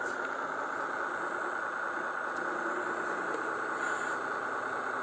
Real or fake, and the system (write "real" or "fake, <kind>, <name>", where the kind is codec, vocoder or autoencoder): real